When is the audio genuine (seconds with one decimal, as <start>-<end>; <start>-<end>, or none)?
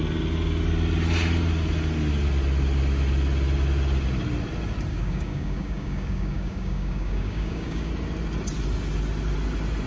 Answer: 0.0-4.9; 7.9-9.9